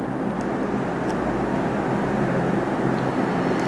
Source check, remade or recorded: recorded